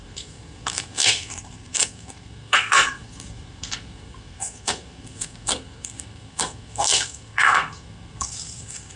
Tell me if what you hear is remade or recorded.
remade